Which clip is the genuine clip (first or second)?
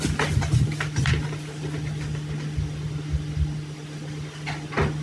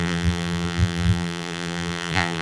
first